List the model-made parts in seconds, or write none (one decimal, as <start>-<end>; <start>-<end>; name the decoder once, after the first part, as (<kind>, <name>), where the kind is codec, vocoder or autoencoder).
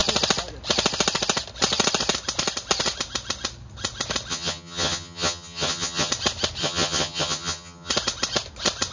4.3-6.1 (vocoder, HiFi-GAN); 6.6-7.9